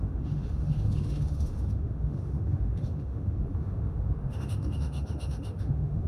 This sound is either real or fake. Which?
fake